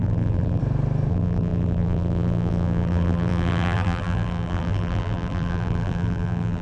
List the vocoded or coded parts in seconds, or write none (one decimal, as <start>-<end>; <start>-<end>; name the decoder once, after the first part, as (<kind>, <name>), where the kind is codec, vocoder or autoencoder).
0.0-0.6 (vocoder, BigVGAN v2); 1.1-6.6